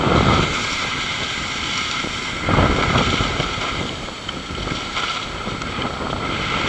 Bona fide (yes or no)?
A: yes